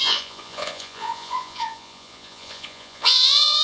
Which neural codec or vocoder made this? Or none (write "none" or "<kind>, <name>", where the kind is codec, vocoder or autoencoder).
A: vocoder, Vocos